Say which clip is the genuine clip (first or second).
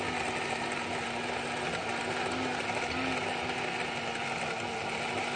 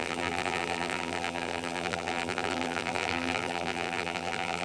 first